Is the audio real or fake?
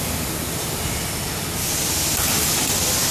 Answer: real